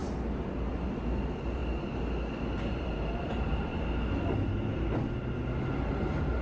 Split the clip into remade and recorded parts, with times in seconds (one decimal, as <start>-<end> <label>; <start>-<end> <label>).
0.0-0.7 recorded; 0.7-1.6 remade; 1.6-2.6 recorded; 2.6-3.7 remade; 3.7-5.9 recorded; 5.9-6.4 remade